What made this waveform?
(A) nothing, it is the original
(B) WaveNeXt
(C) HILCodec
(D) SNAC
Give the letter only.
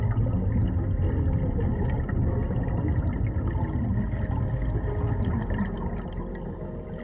A